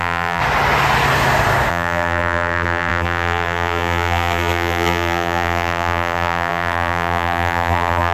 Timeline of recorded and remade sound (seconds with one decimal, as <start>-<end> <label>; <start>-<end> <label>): 0.0-0.4 remade; 0.4-1.7 recorded; 1.7-8.1 remade